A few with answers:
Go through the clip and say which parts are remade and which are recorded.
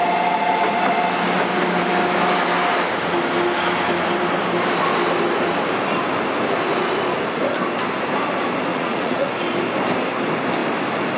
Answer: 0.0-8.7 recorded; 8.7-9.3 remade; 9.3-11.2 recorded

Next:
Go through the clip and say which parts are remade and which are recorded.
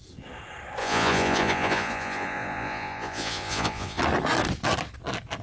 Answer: 0.0-0.8 recorded; 0.8-4.0 remade; 4.0-5.4 recorded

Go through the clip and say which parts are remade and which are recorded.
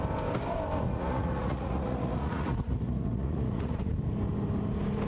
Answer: 0.0-0.8 recorded; 0.8-3.9 remade; 3.9-5.1 recorded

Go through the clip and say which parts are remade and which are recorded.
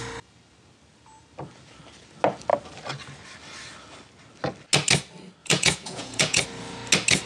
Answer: 0.0-5.4 recorded; 5.4-6.4 remade; 6.4-7.3 recorded